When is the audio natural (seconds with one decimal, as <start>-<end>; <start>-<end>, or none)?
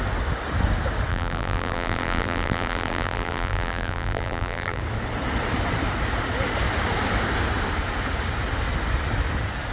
0.0-1.1; 4.8-9.7